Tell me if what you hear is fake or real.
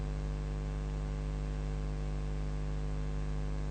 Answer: real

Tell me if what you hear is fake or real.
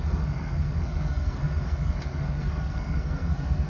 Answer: fake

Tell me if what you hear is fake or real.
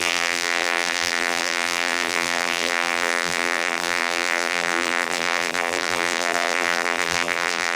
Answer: fake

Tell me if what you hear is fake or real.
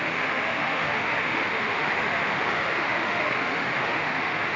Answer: fake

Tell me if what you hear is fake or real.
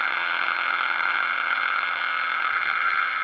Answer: fake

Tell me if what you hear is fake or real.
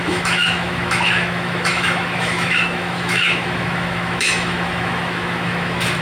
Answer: fake